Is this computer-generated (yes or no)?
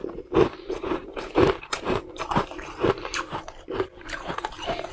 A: yes